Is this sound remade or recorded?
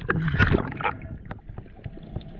recorded